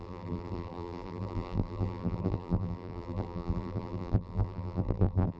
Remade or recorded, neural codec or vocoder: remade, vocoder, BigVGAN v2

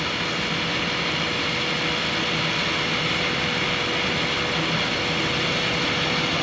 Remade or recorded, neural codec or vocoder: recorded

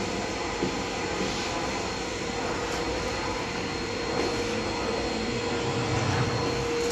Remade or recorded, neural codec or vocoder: recorded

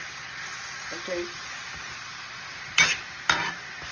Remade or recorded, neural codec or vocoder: recorded